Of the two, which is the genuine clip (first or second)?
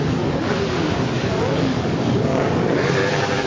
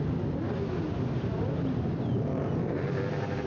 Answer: second